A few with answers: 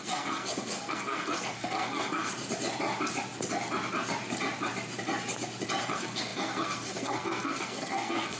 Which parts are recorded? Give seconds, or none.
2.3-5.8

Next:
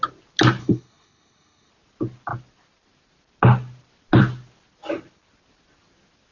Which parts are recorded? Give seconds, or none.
0.0-0.6; 1.7-6.3

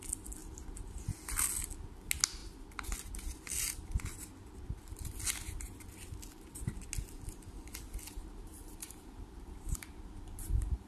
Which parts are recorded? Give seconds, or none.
0.0-0.4; 1.0-8.2

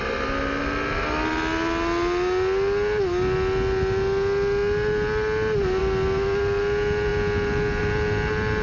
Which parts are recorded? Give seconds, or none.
0.0-8.6

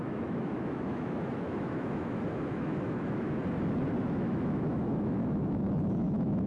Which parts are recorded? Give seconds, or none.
3.4-4.0